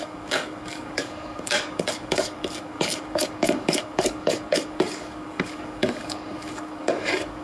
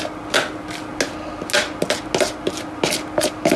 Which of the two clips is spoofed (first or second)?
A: first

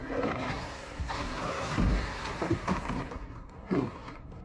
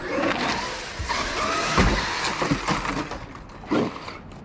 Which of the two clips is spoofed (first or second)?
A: first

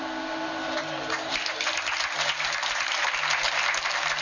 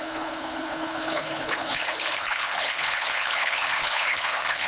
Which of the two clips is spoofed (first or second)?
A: second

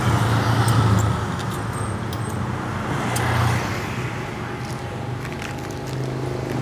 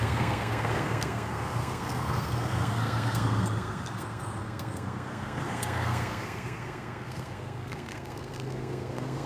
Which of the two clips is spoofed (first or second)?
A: second